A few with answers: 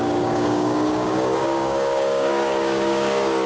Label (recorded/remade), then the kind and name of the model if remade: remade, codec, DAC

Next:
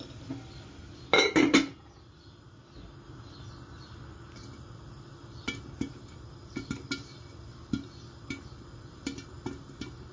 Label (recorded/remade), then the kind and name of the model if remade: recorded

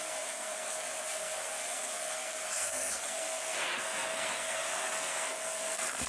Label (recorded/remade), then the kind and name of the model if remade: remade, codec, SNAC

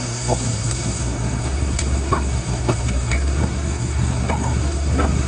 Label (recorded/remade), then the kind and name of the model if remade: remade, codec, SNAC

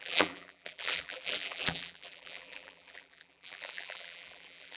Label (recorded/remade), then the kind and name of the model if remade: remade, vocoder, BigVGAN v2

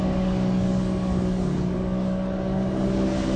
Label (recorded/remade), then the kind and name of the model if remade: remade, codec, DAC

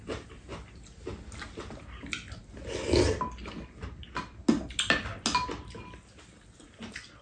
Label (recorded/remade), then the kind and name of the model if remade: recorded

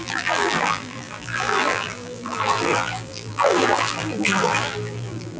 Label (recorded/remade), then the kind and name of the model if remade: remade, vocoder, BigVGAN v2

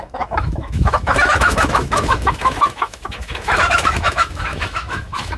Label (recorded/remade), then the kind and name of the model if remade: remade, autoencoder, DAC-VAE